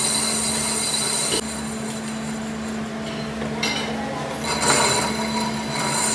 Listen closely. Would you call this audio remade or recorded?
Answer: recorded